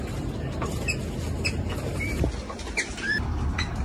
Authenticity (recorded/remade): recorded